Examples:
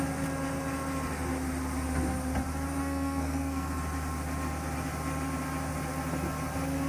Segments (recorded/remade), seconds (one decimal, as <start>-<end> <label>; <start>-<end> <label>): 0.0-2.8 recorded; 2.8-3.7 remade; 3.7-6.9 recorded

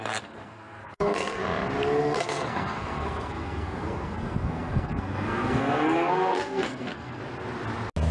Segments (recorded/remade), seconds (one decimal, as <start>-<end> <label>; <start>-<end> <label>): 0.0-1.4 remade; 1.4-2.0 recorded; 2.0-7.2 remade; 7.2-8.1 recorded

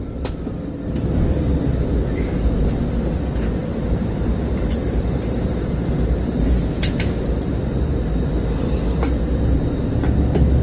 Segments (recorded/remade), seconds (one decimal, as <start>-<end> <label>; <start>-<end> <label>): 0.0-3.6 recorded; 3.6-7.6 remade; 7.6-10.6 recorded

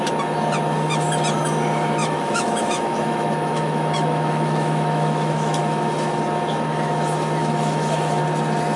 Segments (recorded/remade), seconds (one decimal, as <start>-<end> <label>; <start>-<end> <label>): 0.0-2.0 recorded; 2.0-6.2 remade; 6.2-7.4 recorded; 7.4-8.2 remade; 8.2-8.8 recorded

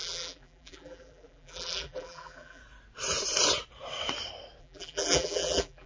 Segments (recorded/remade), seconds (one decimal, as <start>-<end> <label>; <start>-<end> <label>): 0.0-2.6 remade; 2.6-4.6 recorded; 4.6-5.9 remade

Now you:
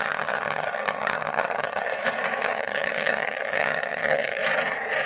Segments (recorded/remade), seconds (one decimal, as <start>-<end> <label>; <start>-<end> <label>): 0.0-1.9 remade; 1.9-2.4 recorded; 2.4-4.4 remade; 4.4-5.1 recorded

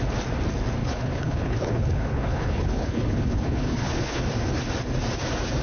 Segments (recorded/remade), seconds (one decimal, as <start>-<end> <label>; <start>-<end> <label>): 0.0-0.8 recorded; 0.8-4.2 remade; 4.2-5.6 recorded

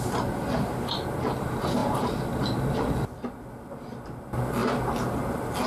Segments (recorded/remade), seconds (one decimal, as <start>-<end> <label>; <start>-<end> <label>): 0.0-5.7 recorded